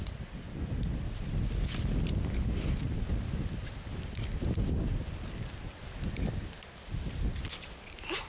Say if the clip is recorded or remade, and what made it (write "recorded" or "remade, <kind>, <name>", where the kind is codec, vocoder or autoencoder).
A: recorded